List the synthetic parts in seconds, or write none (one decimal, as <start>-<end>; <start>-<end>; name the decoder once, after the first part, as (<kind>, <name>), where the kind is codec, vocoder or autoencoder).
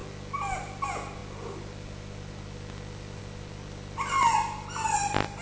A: none